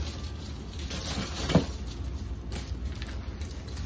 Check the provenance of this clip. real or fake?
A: real